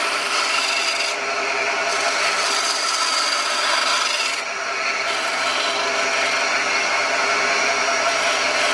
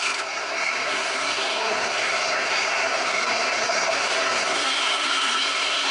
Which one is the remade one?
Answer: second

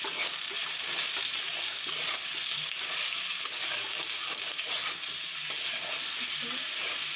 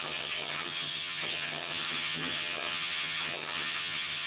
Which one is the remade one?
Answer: second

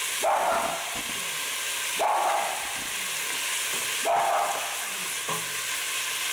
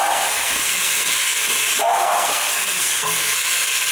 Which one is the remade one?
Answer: second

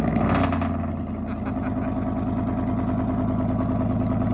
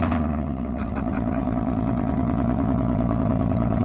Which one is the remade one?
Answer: second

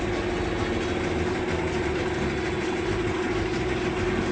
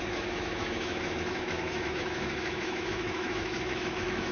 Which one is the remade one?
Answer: second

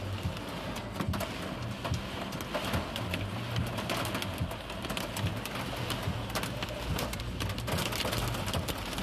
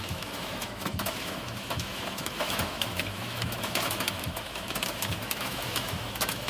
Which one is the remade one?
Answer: second